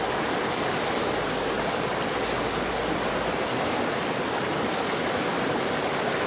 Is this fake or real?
real